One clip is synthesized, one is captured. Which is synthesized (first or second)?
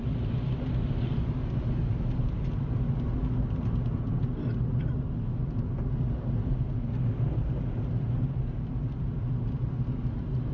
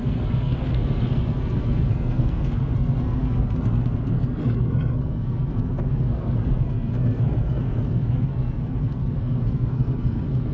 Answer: second